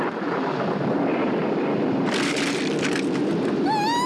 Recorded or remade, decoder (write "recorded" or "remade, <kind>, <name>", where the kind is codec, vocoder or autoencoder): remade, vocoder, BigVGAN v2